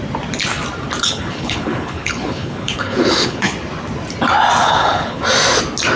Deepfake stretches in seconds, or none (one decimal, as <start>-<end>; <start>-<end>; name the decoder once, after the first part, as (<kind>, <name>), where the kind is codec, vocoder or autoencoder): 1.0-3.5 (codec, HILCodec); 4.6-5.2